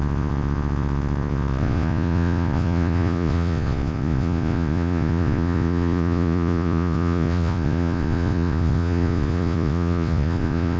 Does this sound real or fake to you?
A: fake